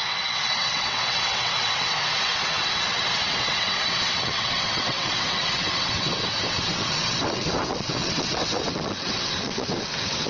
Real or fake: fake